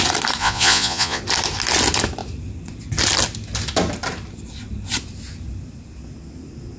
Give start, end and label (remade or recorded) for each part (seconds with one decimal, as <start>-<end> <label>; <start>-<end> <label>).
0.0-0.4 recorded; 0.4-1.2 remade; 1.2-6.8 recorded